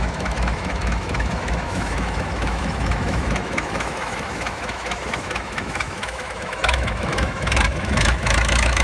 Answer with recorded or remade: remade